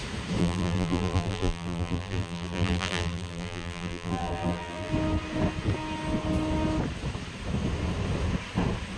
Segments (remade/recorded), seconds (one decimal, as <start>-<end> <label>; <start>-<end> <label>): 0.0-0.4 recorded; 0.4-4.9 remade; 4.9-9.0 recorded